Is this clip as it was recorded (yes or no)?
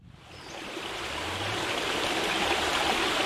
yes